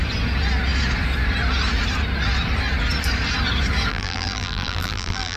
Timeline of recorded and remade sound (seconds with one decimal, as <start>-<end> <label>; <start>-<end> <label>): 0.0-3.9 recorded; 3.9-5.4 remade